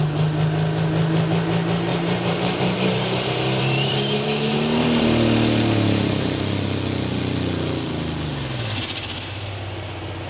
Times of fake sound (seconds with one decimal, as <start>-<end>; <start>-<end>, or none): 1.9-6.1